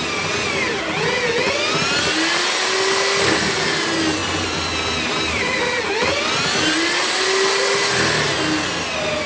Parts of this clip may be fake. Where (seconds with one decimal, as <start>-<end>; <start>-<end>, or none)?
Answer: none